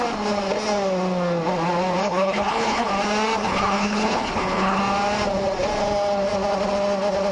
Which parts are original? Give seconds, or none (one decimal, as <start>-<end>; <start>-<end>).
0.0-2.0; 2.9-3.4; 4.8-7.3